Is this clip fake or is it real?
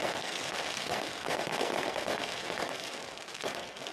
fake